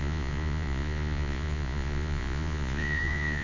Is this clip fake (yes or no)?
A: yes